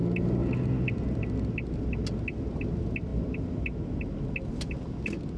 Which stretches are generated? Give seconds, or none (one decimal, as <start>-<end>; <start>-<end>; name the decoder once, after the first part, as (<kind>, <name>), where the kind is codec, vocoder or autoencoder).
none